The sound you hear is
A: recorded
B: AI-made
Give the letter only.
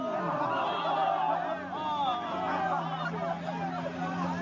A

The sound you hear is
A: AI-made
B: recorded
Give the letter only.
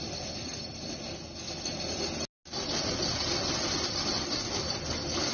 B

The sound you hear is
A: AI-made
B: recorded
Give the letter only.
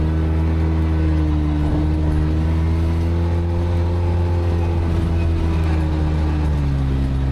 B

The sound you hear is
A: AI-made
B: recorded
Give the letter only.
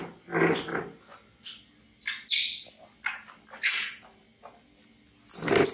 B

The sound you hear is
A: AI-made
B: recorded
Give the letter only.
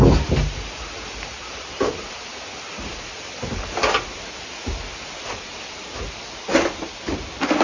B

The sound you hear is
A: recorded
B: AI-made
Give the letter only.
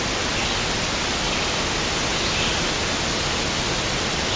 A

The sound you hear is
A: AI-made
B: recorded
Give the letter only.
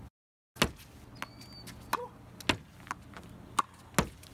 B